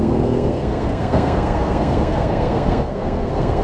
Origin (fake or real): fake